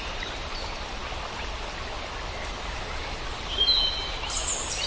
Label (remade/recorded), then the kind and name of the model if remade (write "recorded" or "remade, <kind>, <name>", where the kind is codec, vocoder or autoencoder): recorded